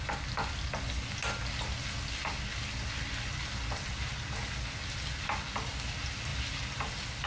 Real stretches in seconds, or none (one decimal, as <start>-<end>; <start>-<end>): 0.0-7.3